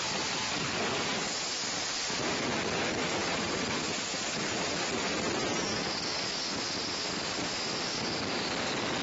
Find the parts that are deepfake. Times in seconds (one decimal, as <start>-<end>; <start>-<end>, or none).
3.2-4.2